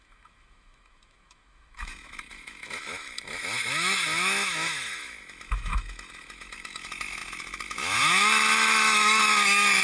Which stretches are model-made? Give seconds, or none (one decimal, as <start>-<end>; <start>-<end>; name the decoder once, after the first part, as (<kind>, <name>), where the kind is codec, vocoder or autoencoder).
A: 0.0-9.8 (autoencoder, DAC-VAE)